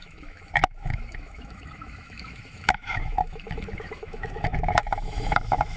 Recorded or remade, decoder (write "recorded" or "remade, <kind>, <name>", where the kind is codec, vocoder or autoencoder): remade, autoencoder, DAC-VAE